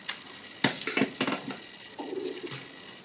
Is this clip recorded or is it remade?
recorded